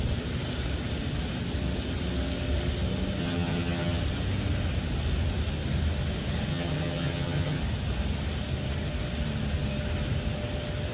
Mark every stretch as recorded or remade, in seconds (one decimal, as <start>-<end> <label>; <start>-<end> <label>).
0.0-3.2 recorded; 3.2-4.0 remade; 4.0-6.5 recorded; 6.5-7.6 remade; 7.6-10.9 recorded